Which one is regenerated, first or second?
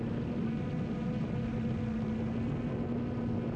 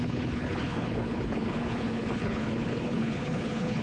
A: second